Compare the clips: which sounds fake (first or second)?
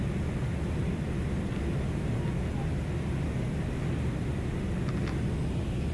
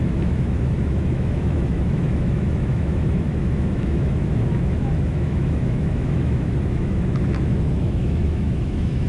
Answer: second